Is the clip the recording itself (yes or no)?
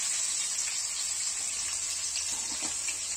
yes